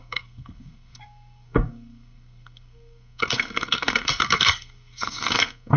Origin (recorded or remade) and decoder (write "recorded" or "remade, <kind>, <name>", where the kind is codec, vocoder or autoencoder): remade, codec, SNAC